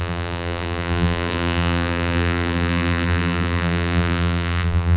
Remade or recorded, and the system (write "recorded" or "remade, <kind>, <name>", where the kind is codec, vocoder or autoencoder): remade, vocoder, BigVGAN v2